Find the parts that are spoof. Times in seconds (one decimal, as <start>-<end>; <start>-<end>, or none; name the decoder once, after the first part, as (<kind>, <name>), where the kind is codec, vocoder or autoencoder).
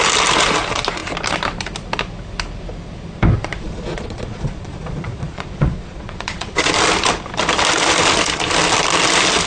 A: 3.4-6.7 (vocoder, Vocos)